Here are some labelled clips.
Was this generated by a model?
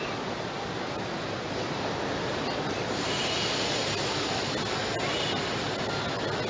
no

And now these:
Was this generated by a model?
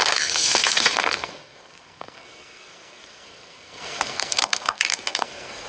yes